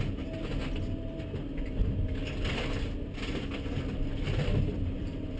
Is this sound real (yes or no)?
yes